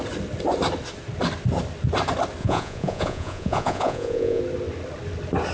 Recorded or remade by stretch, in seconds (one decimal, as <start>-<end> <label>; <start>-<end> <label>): 0.0-2.4 recorded; 2.4-4.4 remade; 4.4-5.5 recorded